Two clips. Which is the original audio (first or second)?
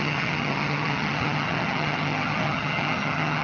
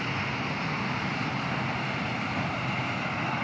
second